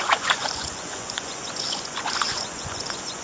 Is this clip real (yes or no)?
no